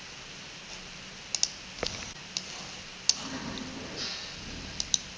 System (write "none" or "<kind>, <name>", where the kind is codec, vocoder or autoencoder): none